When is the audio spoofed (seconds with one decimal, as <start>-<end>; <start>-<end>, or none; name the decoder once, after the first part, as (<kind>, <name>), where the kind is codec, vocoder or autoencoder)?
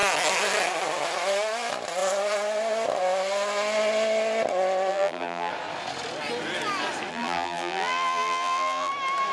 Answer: 4.9-5.5 (vocoder, BigVGAN v2); 7.1-8.9